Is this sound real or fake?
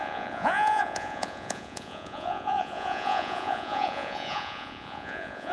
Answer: fake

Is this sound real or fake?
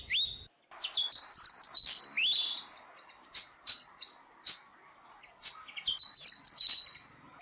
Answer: real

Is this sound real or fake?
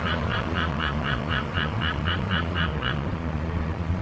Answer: fake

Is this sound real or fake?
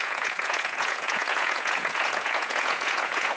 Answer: fake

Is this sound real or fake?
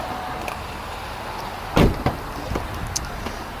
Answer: real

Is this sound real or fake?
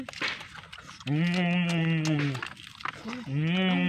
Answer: real